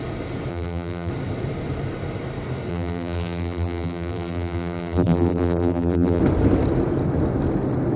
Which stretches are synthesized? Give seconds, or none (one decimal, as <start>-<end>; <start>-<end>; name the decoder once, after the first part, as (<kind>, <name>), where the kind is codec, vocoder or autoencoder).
0.5-1.1 (vocoder, BigVGAN v2); 2.7-6.2

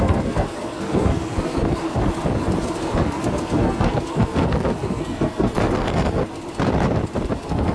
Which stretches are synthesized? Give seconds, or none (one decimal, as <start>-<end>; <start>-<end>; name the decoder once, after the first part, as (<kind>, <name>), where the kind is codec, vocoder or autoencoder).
0.0-2.0 (codec, SNAC); 2.6-6.2; 7.3-7.7

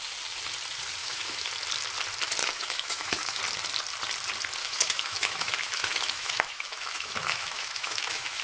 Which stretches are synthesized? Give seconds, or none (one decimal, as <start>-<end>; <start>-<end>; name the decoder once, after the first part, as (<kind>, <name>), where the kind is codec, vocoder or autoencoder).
1.0-1.5 (autoencoder, DAC-VAE); 2.4-3.4; 4.6-8.4